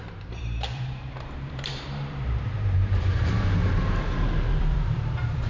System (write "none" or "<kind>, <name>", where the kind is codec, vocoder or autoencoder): vocoder, BigVGAN v2